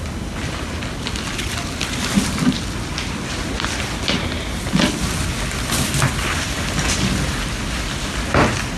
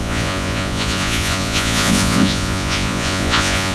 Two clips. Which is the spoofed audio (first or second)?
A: second